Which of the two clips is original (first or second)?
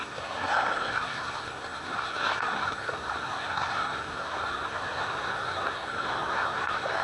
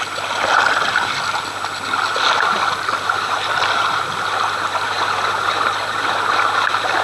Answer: second